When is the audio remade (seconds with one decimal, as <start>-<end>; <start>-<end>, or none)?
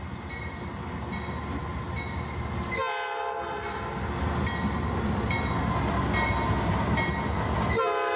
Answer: none